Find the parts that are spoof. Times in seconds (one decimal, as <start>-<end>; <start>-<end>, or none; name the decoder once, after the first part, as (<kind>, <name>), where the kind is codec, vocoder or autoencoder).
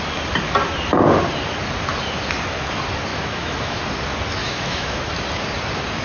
3.1-3.8 (autoencoder, DAC-VAE); 4.4-5.1